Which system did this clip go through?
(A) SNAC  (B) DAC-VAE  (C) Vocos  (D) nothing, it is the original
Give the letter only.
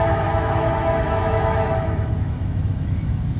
B